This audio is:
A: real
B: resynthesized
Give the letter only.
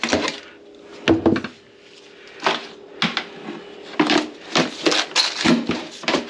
A